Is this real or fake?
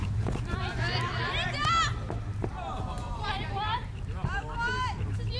fake